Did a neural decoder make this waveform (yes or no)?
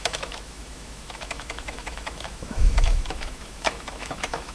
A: yes